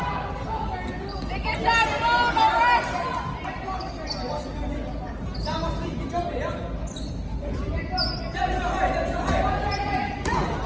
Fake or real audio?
real